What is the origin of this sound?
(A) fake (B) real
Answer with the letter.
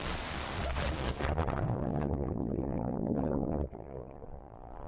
A